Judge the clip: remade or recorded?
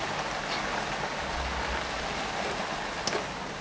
recorded